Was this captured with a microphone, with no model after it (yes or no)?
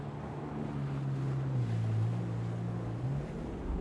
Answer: yes